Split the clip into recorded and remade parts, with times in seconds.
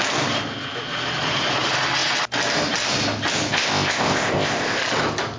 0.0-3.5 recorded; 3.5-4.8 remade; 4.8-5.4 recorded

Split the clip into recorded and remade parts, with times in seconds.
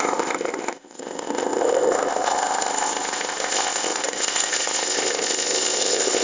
0.0-6.2 remade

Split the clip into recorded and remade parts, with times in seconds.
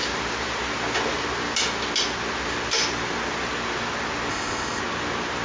0.0-4.3 recorded; 4.3-4.8 remade; 4.8-5.4 recorded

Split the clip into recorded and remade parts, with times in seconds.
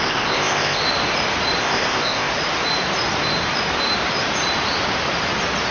0.0-0.8 remade; 0.8-1.6 recorded; 1.6-2.3 remade; 2.3-5.7 recorded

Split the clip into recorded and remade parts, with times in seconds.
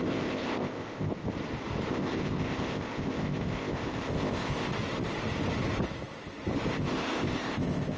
0.0-1.1 remade; 1.1-1.9 recorded; 1.9-4.7 remade; 4.7-6.7 recorded; 6.7-8.0 remade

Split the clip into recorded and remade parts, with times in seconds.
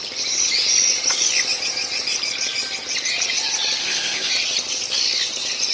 0.0-3.8 recorded; 3.8-4.3 remade; 4.3-5.7 recorded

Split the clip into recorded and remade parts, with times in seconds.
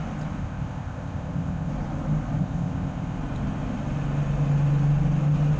0.0-0.4 recorded; 0.4-1.7 remade; 1.7-2.4 recorded; 2.4-3.2 remade; 3.2-5.6 recorded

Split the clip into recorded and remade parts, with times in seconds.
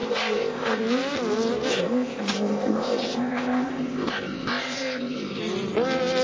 0.0-0.8 remade; 0.8-1.7 recorded; 1.7-5.4 remade; 5.4-6.2 recorded